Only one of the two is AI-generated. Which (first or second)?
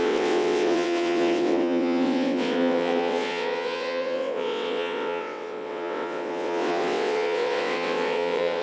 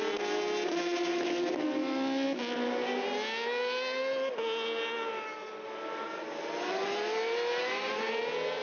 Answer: first